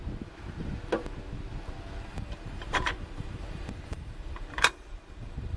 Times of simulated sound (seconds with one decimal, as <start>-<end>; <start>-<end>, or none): 2.1-5.6

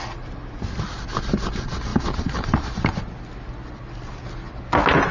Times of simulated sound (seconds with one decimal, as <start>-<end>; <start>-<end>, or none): 1.9-3.0

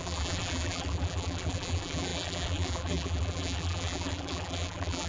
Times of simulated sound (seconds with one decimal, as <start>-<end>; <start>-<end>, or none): 0.0-5.1

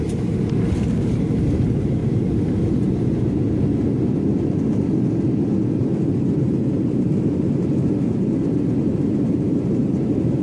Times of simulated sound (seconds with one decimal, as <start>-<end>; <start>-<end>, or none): 0.0-2.0; 6.2-10.4

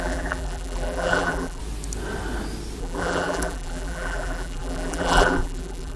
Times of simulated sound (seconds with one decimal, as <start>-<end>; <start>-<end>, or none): 0.0-1.6; 2.8-6.0